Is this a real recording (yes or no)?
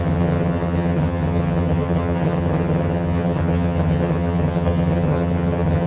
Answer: no